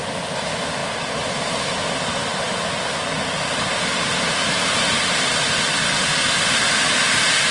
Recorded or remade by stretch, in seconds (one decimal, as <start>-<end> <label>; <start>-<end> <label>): 0.0-7.5 recorded